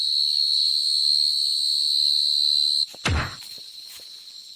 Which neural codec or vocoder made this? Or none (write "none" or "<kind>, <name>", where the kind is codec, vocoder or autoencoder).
none